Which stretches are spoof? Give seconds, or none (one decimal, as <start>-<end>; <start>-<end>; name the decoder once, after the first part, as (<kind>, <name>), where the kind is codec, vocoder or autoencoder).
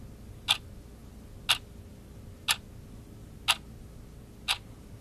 none